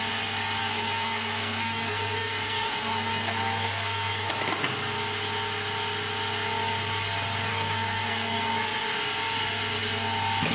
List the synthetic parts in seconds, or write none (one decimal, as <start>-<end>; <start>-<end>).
0.6-4.3; 7.5-8.8